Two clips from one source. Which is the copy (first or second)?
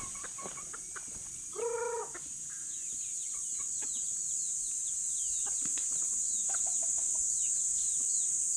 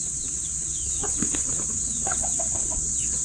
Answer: second